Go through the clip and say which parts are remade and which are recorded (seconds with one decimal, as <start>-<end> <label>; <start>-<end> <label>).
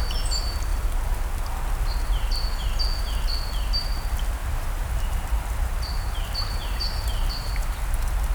0.0-4.4 recorded; 4.4-7.6 remade; 7.6-8.3 recorded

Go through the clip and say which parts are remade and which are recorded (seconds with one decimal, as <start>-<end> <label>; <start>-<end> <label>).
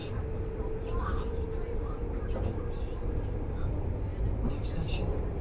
0.0-4.1 remade; 4.1-4.7 recorded; 4.7-5.4 remade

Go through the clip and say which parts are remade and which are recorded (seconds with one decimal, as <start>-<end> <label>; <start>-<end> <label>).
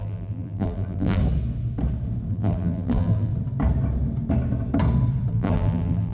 0.0-1.2 remade; 1.2-2.3 recorded; 2.3-3.3 remade; 3.3-5.3 recorded; 5.3-6.1 remade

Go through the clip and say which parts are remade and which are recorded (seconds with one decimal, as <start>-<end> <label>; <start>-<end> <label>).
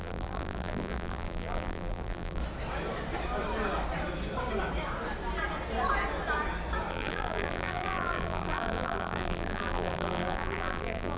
0.0-2.4 remade; 2.4-6.9 recorded; 6.9-11.2 remade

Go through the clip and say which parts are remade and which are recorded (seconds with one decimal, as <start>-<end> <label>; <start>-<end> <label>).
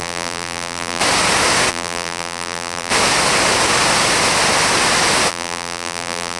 0.0-1.0 remade; 1.0-1.7 recorded; 1.7-2.9 remade; 2.9-5.3 recorded; 5.3-6.4 remade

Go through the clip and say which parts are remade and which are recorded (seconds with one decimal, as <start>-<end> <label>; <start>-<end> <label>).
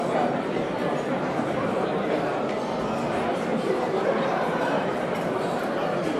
0.0-0.8 recorded; 0.8-2.1 remade; 2.1-3.5 recorded; 3.5-5.0 remade; 5.0-6.2 recorded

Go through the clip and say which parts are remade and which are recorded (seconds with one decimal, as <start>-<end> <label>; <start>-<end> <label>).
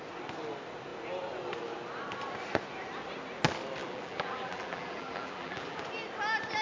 0.0-3.8 recorded; 3.8-5.8 remade; 5.8-6.6 recorded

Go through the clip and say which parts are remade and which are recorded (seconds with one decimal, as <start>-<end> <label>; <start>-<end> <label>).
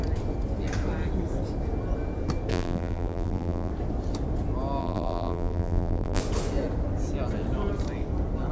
0.0-2.5 recorded; 2.5-3.7 remade; 3.7-4.8 recorded; 4.8-6.2 remade; 6.2-8.5 recorded